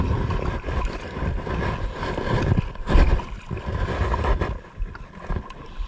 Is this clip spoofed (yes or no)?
no